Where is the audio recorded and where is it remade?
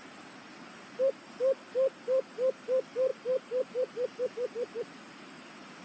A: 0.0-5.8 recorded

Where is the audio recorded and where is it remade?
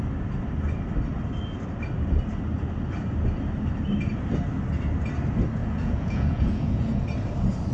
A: 0.0-5.6 recorded; 5.6-7.0 remade; 7.0-7.7 recorded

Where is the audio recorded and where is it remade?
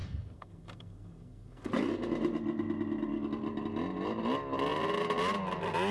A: 0.0-1.7 remade; 1.7-5.9 recorded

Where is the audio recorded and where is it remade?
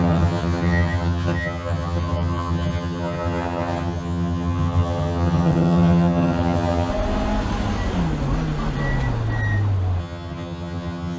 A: 0.0-6.9 remade; 6.9-10.0 recorded; 10.0-11.2 remade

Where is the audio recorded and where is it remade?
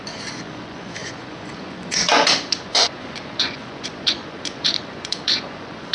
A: 0.0-5.9 remade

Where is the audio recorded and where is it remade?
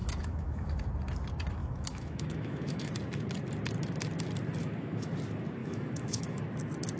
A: 0.0-0.7 remade; 0.7-1.6 recorded; 1.6-2.9 remade; 2.9-4.6 recorded; 4.6-5.1 remade; 5.1-5.6 recorded; 5.6-6.4 remade; 6.4-7.0 recorded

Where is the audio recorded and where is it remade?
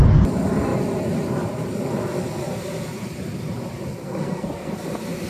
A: 0.0-4.0 recorded; 4.0-4.7 remade; 4.7-5.3 recorded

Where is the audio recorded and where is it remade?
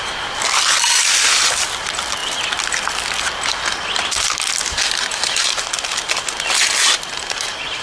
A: 0.0-7.8 recorded